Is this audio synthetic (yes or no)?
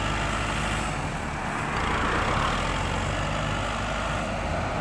no